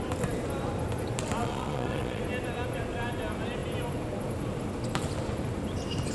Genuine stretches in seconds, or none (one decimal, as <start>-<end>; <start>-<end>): 0.0-1.4; 2.2-6.1

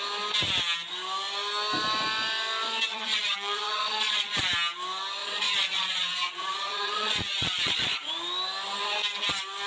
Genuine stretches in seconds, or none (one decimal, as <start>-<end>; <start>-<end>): 0.0-2.9; 4.4-5.2; 8.1-9.7

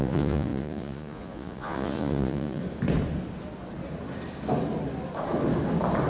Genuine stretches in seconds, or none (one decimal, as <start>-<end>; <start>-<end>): 2.6-6.1

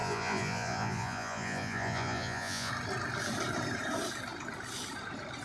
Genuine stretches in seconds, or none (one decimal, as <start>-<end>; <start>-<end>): 2.7-5.4